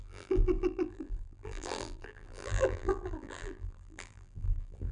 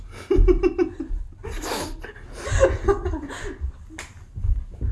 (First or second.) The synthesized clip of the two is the first